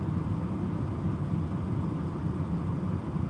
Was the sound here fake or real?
real